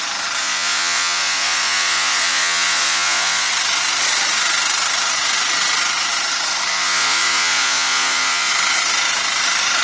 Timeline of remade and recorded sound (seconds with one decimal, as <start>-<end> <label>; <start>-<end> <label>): 0.0-0.4 recorded; 0.4-3.5 remade; 3.5-6.7 recorded; 6.7-8.5 remade; 8.5-9.8 recorded